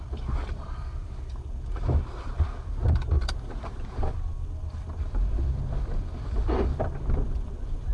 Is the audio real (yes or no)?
no